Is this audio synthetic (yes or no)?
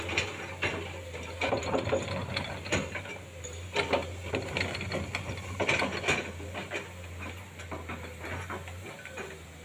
no